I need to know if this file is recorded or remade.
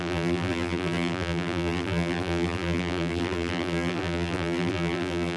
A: remade